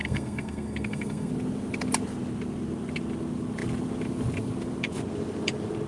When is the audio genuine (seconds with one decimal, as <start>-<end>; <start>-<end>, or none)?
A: 1.3-5.9